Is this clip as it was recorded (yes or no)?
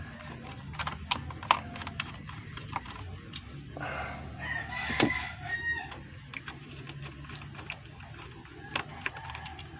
yes